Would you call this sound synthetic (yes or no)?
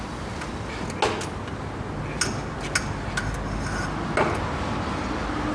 no